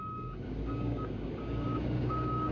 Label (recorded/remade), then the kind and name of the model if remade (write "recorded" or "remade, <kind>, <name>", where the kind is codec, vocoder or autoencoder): remade, codec, DAC